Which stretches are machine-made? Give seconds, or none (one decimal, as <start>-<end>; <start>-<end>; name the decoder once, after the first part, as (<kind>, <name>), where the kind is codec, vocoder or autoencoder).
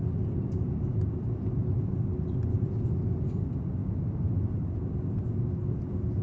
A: none